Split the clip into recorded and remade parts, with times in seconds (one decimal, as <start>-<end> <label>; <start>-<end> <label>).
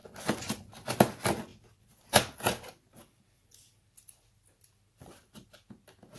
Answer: 0.0-1.5 recorded; 1.5-3.5 remade; 3.5-6.2 recorded